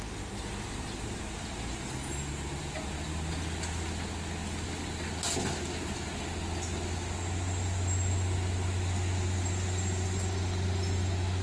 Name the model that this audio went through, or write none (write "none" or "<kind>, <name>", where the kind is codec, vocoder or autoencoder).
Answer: none